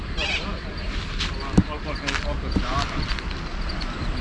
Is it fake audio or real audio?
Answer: real